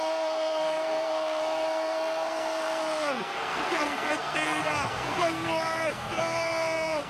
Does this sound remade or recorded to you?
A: remade